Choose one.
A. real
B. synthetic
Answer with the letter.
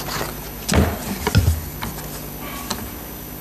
A